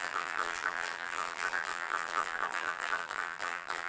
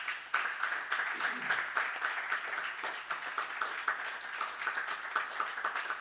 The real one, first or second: second